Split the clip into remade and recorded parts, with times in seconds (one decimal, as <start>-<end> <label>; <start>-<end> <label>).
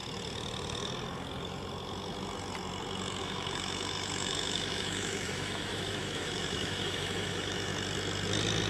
0.0-3.2 recorded; 3.2-7.7 remade; 7.7-8.7 recorded